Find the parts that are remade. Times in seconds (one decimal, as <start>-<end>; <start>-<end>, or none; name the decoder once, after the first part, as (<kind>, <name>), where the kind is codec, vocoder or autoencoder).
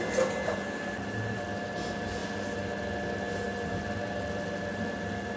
none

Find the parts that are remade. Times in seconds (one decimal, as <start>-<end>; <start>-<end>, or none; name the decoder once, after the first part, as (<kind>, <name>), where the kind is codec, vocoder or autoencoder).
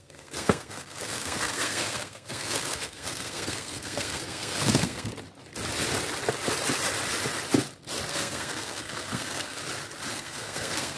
0.0-5.1 (codec, SNAC); 8.1-9.6; 10.1-11.0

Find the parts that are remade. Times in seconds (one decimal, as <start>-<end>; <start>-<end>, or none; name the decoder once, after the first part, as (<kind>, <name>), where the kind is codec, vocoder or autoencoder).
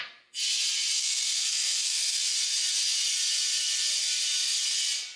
1.0-2.2 (codec, SNAC)